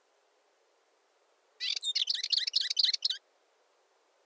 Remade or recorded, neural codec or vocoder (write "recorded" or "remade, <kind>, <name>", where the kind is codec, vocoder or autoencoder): recorded